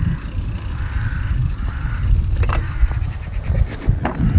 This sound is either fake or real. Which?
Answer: real